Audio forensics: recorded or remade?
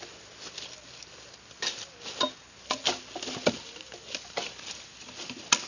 recorded